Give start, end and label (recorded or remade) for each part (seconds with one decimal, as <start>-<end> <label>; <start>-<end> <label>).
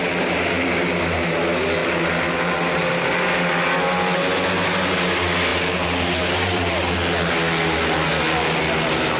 0.0-1.8 recorded; 1.8-3.1 remade; 3.1-5.5 recorded; 5.5-6.9 remade; 6.9-9.2 recorded